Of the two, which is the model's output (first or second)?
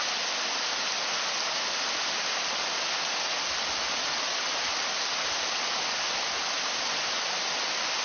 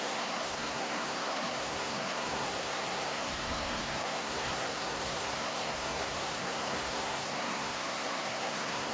second